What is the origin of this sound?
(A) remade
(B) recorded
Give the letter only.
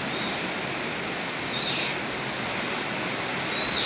B